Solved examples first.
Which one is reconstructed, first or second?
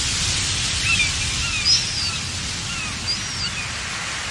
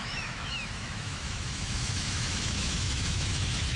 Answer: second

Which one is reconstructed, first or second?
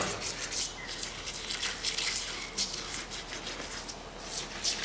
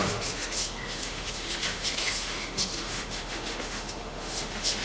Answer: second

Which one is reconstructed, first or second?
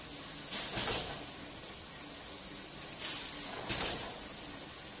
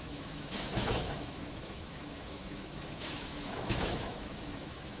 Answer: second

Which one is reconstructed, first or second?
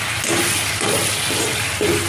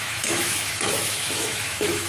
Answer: second